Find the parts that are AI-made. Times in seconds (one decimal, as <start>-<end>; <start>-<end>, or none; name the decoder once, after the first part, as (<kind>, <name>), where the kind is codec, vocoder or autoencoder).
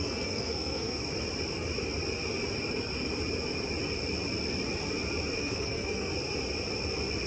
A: 0.0-1.0 (codec, SNAC); 5.4-6.1